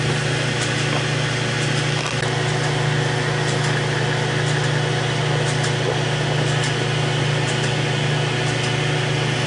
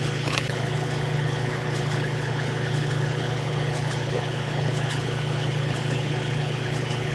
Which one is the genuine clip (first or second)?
first